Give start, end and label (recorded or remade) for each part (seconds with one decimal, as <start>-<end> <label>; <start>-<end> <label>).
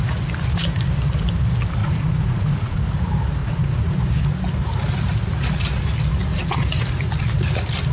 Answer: 0.0-1.8 recorded; 1.8-2.8 remade; 2.8-3.4 recorded; 3.4-3.9 remade; 3.9-6.3 recorded; 6.3-6.8 remade; 6.8-7.9 recorded